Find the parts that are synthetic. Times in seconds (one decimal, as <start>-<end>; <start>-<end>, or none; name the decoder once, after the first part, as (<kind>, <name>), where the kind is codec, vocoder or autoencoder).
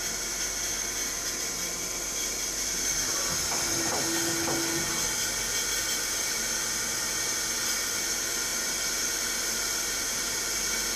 none